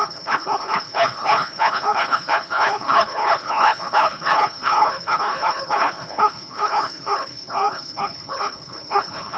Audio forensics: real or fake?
fake